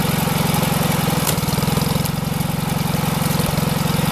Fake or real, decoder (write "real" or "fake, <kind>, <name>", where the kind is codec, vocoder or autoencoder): real